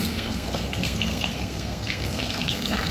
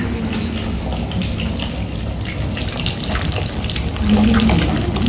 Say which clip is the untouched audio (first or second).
second